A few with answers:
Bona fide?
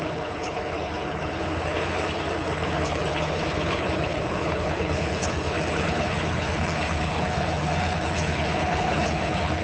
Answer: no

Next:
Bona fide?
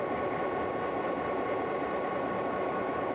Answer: yes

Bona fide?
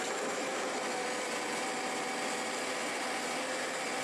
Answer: no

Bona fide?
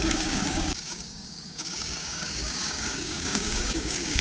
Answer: no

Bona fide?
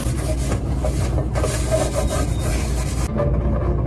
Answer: yes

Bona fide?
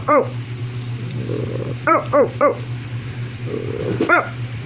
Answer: no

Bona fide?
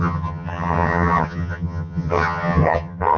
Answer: no